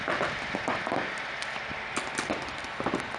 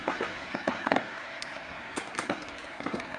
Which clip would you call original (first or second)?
first